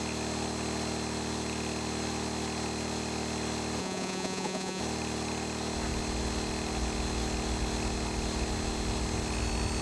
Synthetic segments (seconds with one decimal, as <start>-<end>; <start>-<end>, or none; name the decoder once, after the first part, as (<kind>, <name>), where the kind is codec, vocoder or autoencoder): 3.8-4.8 (vocoder, Vocos)

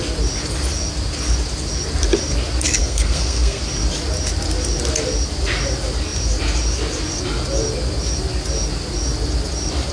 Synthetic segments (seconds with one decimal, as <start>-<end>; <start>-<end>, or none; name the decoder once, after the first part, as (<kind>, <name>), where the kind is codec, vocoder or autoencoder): 2.8-3.6 (codec, SNAC)

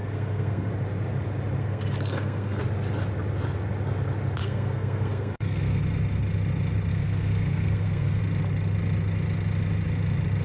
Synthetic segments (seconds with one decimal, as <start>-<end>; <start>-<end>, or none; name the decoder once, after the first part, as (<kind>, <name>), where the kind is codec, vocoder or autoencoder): 0.0-0.7 (codec, SNAC); 1.6-2.6; 4.4-5.8; 6.9-8.2

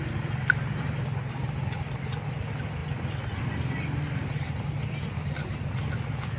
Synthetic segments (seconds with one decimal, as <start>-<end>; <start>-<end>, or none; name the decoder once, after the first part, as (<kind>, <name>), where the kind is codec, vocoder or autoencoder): none

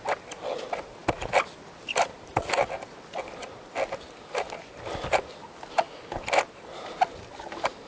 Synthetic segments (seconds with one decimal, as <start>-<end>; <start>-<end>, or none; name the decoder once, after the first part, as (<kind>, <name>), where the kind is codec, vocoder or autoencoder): none

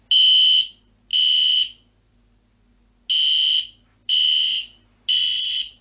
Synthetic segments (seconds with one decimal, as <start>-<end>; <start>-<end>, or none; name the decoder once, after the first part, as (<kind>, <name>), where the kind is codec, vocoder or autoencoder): none